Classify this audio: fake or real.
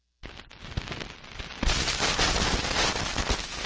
real